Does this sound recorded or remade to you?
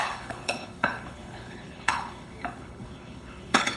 remade